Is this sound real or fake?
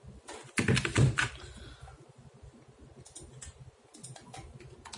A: real